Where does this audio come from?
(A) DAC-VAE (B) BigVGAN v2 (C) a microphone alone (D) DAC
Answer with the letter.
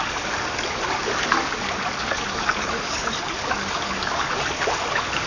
D